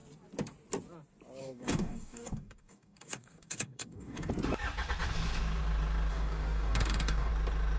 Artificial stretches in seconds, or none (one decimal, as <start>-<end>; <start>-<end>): 1.4-4.3; 6.1-7.3